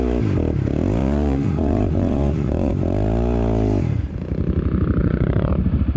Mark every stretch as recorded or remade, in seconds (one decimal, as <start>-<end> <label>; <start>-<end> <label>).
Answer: 0.0-1.0 recorded; 1.0-2.7 remade; 2.7-5.0 recorded; 5.0-5.5 remade; 5.5-6.0 recorded